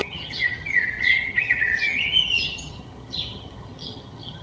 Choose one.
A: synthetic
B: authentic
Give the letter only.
A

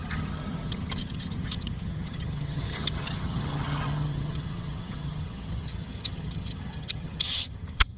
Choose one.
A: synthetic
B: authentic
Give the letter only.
A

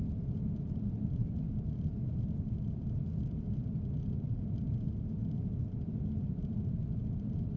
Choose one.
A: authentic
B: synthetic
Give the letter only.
A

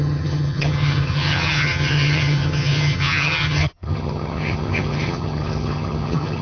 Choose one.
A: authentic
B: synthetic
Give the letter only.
B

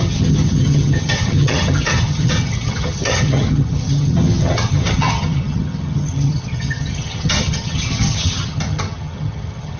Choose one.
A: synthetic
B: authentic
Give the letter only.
A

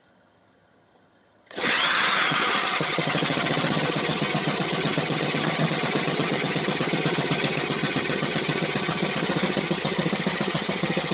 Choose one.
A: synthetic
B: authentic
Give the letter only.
A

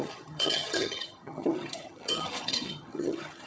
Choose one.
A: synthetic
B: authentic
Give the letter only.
A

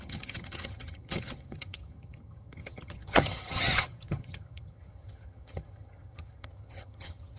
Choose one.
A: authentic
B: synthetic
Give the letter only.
B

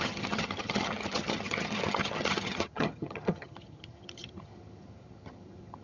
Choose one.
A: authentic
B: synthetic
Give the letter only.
B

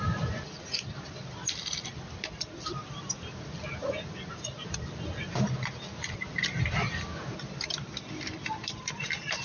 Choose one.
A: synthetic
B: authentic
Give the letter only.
B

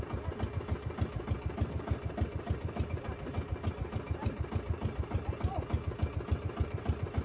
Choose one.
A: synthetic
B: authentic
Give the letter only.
B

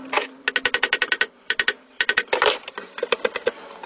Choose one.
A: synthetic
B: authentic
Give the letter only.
B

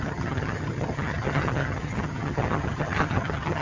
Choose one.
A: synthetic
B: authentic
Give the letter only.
A